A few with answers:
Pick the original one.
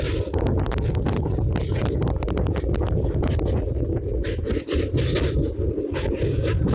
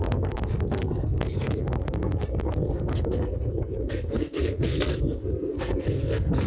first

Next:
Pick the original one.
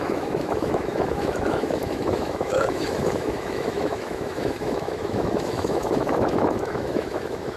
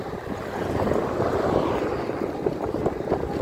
second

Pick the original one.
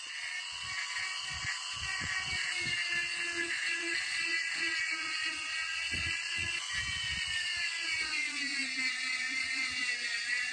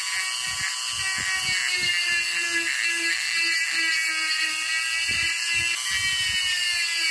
second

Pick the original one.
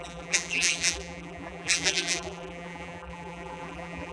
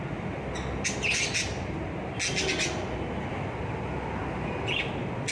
second